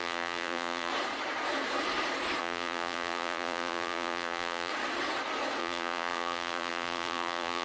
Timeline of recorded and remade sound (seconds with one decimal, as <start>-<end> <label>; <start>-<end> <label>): 0.0-0.9 remade; 0.9-2.4 recorded; 2.4-4.7 remade; 4.7-5.6 recorded; 5.6-7.6 remade